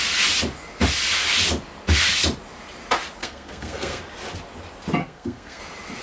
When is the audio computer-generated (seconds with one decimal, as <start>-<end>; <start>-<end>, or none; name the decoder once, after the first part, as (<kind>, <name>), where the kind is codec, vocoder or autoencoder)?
3.2-4.0 (codec, SNAC); 5.0-5.6